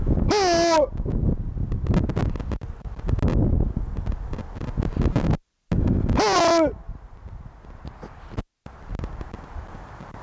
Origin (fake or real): real